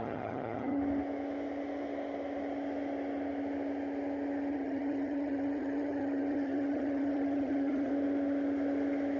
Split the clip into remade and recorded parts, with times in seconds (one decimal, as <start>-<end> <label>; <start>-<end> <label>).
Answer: 0.0-0.8 remade; 0.8-4.5 recorded; 4.5-7.9 remade; 7.9-9.2 recorded